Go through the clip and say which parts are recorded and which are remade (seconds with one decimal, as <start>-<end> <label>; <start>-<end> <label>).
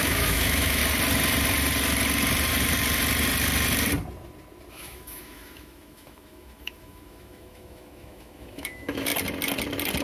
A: 0.0-0.8 remade; 0.8-4.7 recorded; 4.7-9.1 remade; 9.1-10.0 recorded